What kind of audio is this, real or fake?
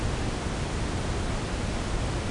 real